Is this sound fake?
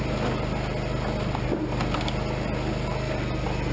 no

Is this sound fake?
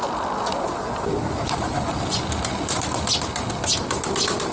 no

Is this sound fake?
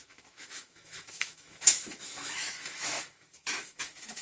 yes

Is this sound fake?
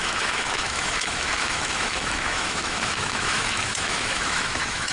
yes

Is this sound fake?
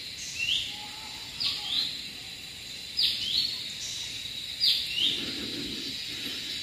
no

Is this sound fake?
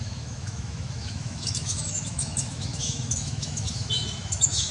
yes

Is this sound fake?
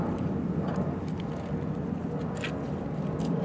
no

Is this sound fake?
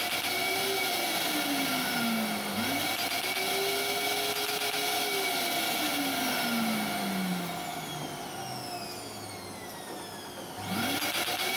no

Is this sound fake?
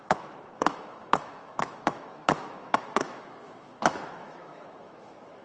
yes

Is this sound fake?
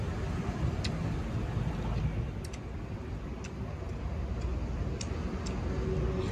no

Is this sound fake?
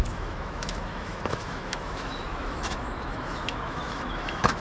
yes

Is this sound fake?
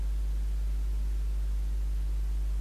no